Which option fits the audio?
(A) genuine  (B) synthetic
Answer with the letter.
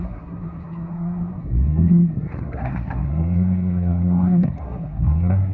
B